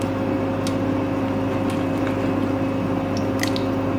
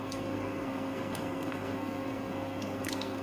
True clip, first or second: first